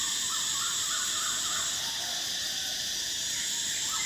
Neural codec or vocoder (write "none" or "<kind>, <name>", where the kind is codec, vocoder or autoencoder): none